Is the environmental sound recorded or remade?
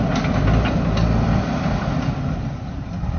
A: recorded